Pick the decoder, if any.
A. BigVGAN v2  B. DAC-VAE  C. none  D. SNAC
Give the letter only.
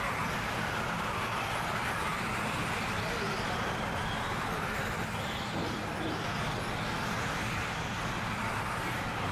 C